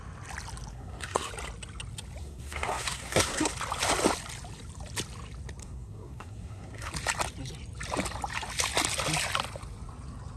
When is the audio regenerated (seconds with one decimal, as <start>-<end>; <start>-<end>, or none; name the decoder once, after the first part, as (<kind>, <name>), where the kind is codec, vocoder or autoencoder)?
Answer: 0.7-1.3 (codec, SNAC); 2.2-3.5; 5.6-6.9